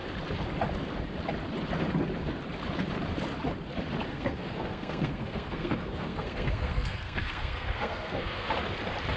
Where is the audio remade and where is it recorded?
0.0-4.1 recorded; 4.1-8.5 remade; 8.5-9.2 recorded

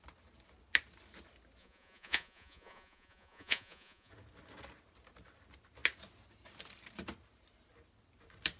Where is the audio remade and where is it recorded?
0.0-1.6 recorded; 1.6-4.1 remade; 4.1-8.6 recorded